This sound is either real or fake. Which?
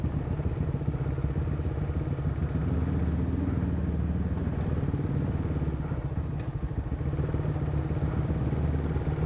real